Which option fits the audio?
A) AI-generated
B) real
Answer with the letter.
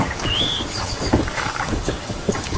A